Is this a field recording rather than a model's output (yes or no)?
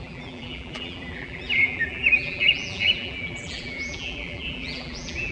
no